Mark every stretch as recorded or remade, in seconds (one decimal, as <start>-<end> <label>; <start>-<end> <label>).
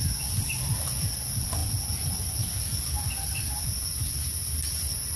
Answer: 0.0-5.2 recorded